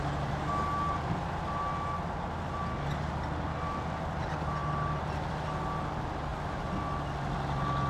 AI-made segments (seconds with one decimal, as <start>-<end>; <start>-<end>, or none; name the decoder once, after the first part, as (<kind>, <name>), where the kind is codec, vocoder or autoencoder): none